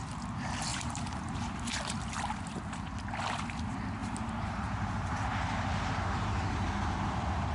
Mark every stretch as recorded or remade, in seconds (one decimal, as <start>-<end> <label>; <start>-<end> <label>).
0.0-0.7 recorded; 0.7-1.7 remade; 1.7-4.0 recorded; 4.0-6.7 remade; 6.7-7.5 recorded